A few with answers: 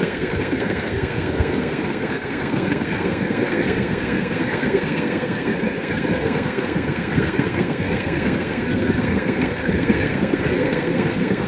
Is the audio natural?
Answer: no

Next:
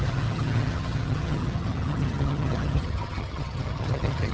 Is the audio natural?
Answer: no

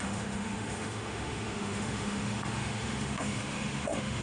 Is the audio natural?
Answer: no